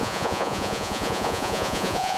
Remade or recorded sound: remade